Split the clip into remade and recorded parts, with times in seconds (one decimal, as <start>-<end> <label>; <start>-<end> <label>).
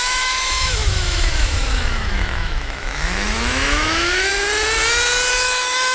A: 0.0-4.3 remade; 4.3-5.3 recorded; 5.3-5.9 remade